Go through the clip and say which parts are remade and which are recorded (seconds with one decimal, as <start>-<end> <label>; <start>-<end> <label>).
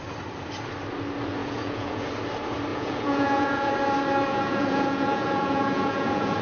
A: 0.0-1.4 recorded; 1.4-2.1 remade; 2.1-2.7 recorded; 2.7-3.7 remade; 3.7-4.3 recorded; 4.3-6.4 remade